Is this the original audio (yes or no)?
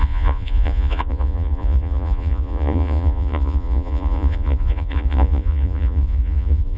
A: no